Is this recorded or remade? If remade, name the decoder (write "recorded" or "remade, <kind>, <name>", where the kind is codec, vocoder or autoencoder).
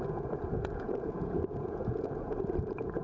remade, vocoder, Vocos